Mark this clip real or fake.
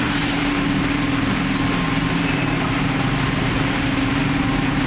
fake